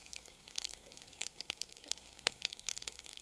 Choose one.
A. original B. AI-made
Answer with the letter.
B